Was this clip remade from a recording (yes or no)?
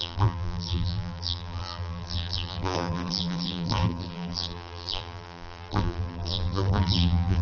yes